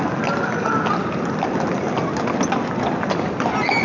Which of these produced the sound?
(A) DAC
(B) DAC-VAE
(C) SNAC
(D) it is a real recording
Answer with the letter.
D